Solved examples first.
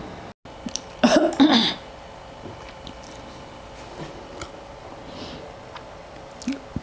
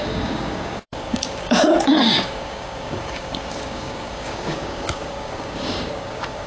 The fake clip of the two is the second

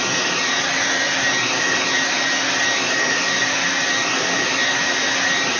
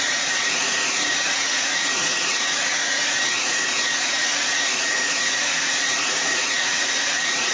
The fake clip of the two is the second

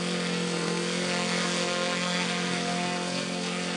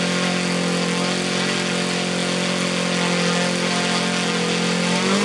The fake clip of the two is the first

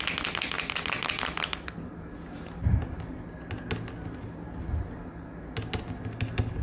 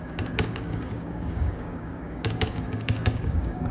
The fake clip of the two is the second